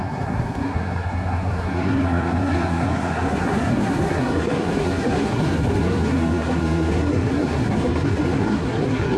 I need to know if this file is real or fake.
fake